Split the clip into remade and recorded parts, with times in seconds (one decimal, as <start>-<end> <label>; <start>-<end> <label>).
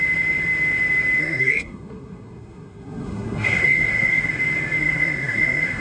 0.0-1.2 recorded; 1.2-4.3 remade; 4.3-4.8 recorded; 4.8-5.8 remade